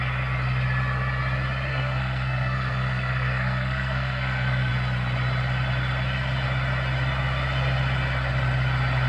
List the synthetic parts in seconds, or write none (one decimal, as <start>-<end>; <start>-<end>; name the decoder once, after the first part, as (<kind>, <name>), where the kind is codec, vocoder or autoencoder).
1.7-4.7 (codec, SNAC)